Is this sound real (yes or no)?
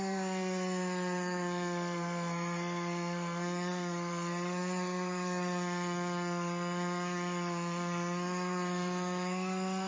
no